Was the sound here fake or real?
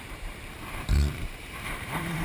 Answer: fake